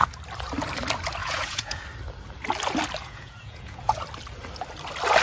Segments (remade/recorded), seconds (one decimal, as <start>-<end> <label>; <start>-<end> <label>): 0.0-1.2 recorded; 1.2-1.8 remade; 1.8-3.0 recorded; 3.0-4.0 remade; 4.0-5.2 recorded